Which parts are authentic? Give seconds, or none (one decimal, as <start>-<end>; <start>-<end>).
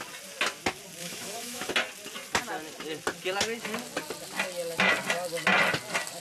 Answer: 0.0-1.0; 1.7-6.2